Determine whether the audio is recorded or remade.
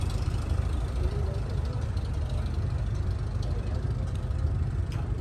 remade